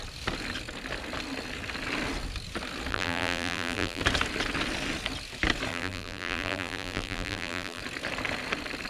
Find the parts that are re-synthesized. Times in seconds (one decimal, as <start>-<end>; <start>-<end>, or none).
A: 2.9-4.0; 5.7-7.8